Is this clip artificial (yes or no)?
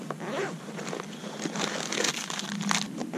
no